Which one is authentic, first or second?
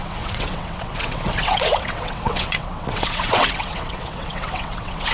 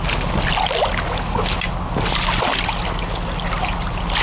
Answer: second